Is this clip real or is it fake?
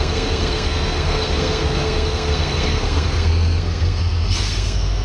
fake